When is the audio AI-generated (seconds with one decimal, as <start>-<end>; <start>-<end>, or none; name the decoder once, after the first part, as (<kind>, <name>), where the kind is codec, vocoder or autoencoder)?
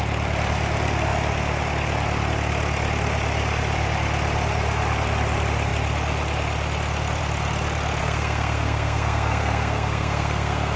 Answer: 8.0-10.8 (codec, SNAC)